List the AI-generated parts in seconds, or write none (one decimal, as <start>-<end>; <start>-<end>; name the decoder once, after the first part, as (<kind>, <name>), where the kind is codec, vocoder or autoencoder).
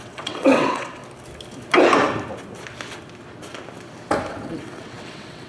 0.0-1.0 (vocoder, WaveNeXt); 4.3-5.5